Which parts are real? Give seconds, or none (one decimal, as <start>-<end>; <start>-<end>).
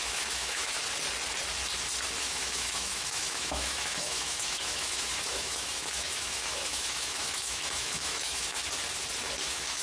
0.8-2.2; 8.6-9.4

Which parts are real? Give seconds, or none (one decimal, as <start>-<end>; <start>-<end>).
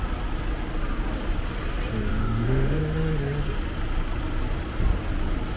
0.0-2.1; 2.8-5.6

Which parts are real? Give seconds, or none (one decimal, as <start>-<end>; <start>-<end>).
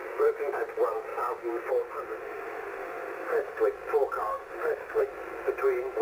0.0-2.2; 3.6-4.3; 5.1-6.0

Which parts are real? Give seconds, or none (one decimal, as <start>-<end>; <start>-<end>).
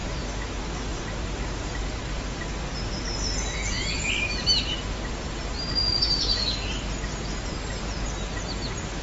0.0-9.0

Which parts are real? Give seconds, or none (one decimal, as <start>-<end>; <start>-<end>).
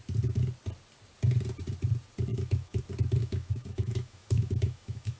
0.0-2.3; 2.8-3.2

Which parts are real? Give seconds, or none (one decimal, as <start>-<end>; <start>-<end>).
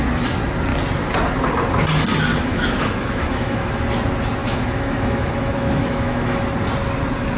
0.0-2.3; 3.8-4.4; 6.4-7.4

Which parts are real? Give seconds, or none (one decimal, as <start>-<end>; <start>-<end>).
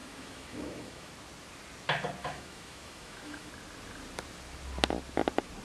1.1-2.2; 3.5-5.6